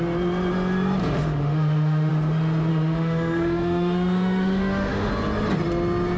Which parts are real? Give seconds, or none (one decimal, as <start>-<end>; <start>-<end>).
0.0-1.0; 2.1-2.7; 5.1-6.2